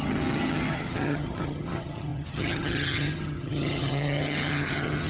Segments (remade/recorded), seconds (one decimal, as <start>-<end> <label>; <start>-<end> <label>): 0.0-5.1 remade